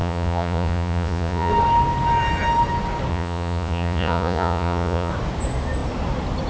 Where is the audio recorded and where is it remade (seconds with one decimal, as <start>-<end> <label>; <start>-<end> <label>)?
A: 0.0-1.5 remade; 1.5-3.1 recorded; 3.1-5.1 remade; 5.1-6.5 recorded